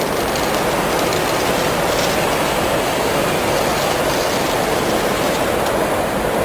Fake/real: real